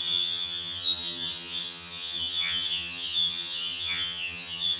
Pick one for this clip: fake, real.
fake